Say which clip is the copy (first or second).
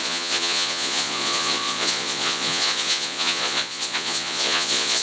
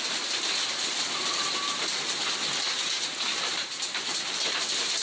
first